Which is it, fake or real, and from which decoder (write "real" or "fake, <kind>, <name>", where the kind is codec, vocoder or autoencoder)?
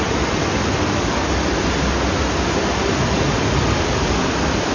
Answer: real